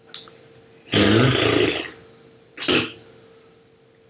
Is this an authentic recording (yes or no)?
yes